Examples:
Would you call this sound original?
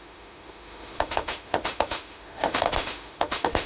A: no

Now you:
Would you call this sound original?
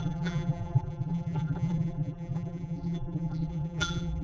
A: no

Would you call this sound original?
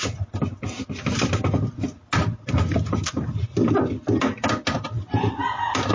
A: yes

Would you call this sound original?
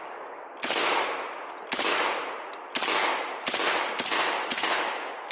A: yes